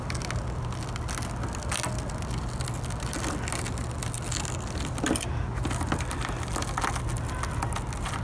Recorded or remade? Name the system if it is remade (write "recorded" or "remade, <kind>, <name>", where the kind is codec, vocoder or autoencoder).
recorded